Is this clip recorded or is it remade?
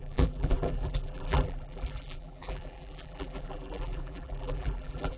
remade